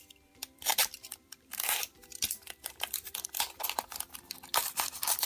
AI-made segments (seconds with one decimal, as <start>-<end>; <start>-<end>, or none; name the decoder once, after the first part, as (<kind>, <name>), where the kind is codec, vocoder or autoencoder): 0.0-4.5 (vocoder, BigVGAN v2)